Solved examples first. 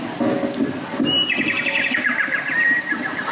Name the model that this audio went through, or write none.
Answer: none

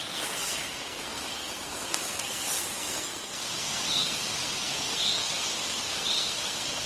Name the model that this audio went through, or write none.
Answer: codec, SNAC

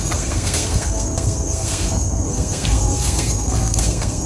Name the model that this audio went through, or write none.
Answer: codec, SNAC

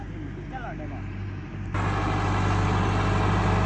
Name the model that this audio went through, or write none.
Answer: none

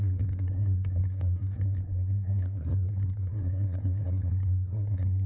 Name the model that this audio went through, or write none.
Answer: codec, SNAC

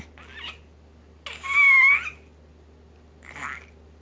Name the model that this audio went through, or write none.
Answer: none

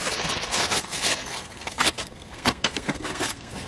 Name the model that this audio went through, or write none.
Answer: codec, SNAC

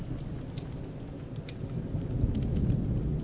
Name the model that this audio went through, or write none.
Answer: none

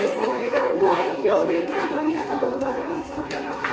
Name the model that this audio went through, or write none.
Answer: codec, SNAC